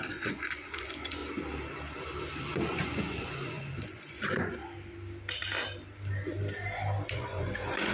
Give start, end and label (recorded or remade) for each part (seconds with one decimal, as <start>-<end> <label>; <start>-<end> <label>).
0.0-1.2 remade; 1.2-2.4 recorded; 2.4-4.6 remade; 4.6-7.1 recorded; 7.1-7.9 remade